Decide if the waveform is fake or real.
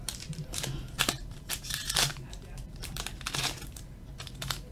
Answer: fake